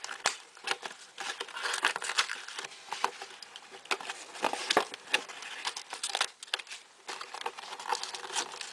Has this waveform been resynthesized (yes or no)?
no